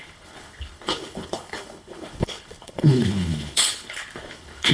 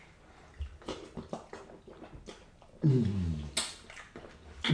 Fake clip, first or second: first